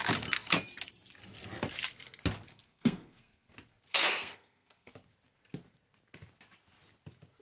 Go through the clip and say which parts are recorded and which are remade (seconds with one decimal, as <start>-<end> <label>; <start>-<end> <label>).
0.0-2.5 recorded; 2.5-3.5 remade; 3.5-3.9 recorded; 3.9-4.9 remade; 4.9-7.4 recorded

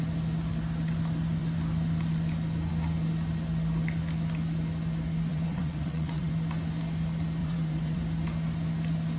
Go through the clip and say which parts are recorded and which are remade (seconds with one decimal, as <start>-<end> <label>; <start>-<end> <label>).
0.0-5.3 recorded; 5.3-6.3 remade; 6.3-7.4 recorded; 7.4-8.0 remade; 8.0-9.2 recorded